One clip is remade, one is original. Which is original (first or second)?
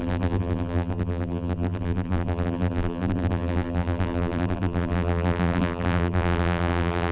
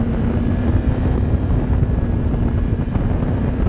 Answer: second